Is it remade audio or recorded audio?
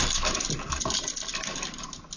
recorded